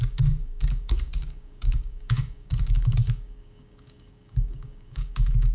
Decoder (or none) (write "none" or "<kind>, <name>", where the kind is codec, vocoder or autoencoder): codec, DAC